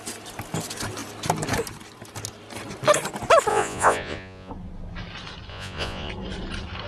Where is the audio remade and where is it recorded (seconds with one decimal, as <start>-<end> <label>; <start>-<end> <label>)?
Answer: 0.0-3.5 recorded; 3.5-4.5 remade; 4.5-5.5 recorded; 5.5-6.1 remade; 6.1-6.9 recorded